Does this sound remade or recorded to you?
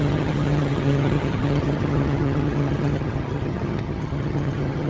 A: remade